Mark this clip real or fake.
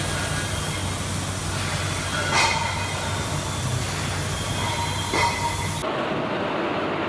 real